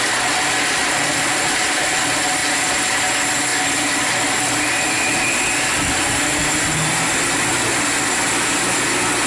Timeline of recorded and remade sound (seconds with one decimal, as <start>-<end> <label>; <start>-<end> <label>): 0.0-0.8 recorded; 0.8-2.0 remade; 2.0-2.4 recorded; 2.4-3.0 remade; 3.0-9.3 recorded